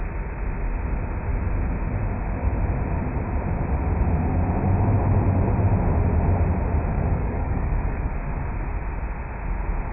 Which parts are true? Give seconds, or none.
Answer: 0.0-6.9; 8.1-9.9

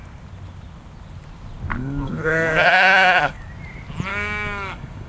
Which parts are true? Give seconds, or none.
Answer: 0.0-1.8; 3.5-4.1

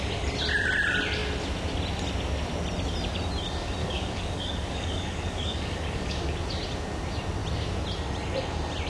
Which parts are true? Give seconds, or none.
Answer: 0.0-3.8; 6.3-8.9